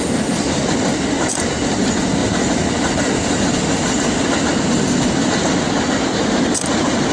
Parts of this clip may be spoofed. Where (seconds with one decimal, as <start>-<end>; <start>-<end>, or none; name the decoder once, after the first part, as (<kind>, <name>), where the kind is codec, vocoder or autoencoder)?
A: none